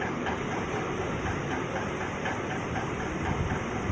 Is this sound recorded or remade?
recorded